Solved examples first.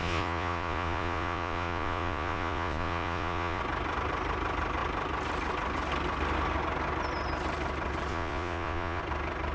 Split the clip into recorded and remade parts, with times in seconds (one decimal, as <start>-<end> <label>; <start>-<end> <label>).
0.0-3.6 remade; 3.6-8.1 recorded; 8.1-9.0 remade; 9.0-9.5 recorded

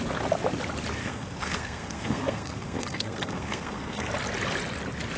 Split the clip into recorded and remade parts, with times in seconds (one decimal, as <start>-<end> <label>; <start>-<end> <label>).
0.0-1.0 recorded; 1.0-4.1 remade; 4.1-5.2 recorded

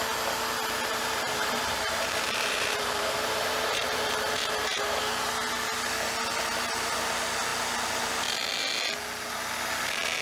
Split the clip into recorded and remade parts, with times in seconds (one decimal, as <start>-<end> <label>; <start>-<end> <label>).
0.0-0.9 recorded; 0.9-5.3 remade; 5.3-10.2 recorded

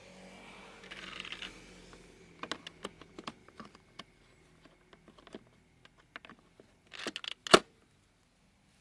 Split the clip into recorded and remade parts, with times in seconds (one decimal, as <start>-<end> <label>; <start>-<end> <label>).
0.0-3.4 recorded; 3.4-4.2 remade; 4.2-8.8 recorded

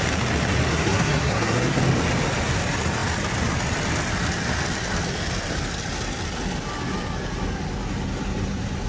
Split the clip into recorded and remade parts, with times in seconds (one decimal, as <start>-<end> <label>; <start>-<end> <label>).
0.0-0.7 recorded; 0.7-1.8 remade; 1.8-8.9 recorded

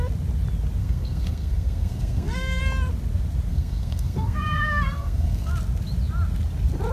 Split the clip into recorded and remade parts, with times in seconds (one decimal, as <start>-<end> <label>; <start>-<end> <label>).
0.0-0.8 recorded; 0.8-2.6 remade; 2.6-3.5 recorded; 3.5-5.5 remade; 5.5-6.9 recorded